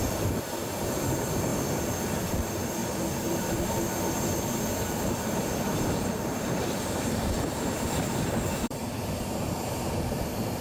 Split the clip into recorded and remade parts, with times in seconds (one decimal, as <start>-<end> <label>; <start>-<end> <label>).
0.0-1.5 remade; 1.5-2.3 recorded; 2.3-8.8 remade; 8.8-9.9 recorded; 9.9-10.6 remade